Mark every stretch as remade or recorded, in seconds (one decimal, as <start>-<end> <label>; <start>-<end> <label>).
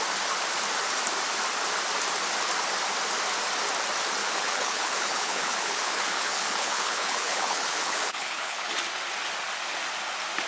0.0-4.2 recorded; 4.2-8.7 remade; 8.7-10.5 recorded